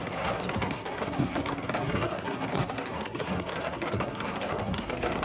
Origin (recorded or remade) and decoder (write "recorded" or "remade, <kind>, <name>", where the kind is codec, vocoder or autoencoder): remade, codec, SNAC